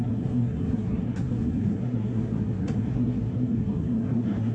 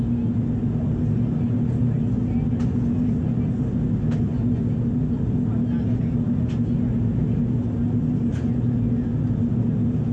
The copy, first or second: first